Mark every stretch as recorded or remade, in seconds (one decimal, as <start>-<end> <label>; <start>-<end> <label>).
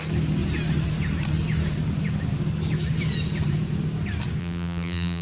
0.0-4.4 recorded; 4.4-5.2 remade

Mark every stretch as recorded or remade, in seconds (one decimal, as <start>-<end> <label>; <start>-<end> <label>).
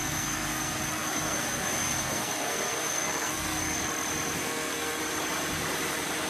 0.0-3.8 remade; 3.8-4.4 recorded; 4.4-5.0 remade; 5.0-6.3 recorded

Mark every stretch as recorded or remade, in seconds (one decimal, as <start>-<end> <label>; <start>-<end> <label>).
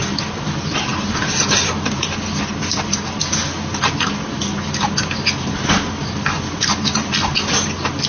0.0-8.1 recorded